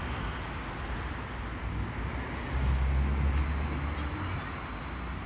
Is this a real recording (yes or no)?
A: yes